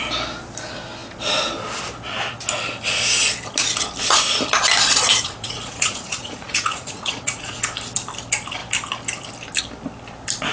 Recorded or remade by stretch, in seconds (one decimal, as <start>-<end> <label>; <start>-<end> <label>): 0.0-5.1 recorded; 5.1-7.6 remade; 7.6-10.5 recorded